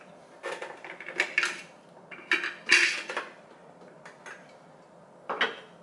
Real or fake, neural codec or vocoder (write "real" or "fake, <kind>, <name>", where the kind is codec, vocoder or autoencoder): real